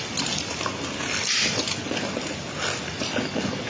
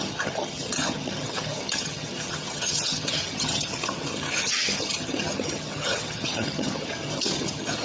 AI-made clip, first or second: second